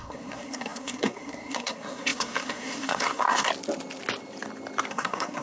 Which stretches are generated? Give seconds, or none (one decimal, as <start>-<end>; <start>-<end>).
0.0-3.5; 4.9-5.4